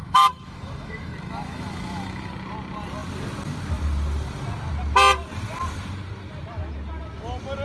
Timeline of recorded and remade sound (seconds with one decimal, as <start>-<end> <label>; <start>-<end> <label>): 0.0-2.3 remade; 2.3-7.6 recorded